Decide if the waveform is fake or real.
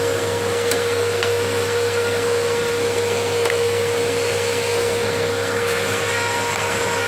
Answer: fake